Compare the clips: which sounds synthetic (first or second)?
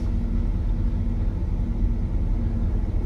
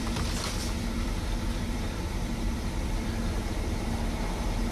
second